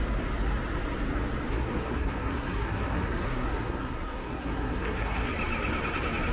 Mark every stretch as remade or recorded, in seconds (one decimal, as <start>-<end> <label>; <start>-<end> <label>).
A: 0.0-1.5 recorded; 1.5-5.3 remade; 5.3-6.3 recorded